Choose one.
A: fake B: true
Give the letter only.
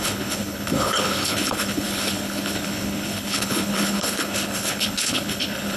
A